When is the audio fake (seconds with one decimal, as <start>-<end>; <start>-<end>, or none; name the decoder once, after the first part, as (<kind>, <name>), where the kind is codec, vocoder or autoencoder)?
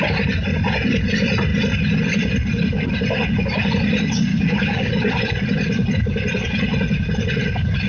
4.3-4.9 (codec, DAC)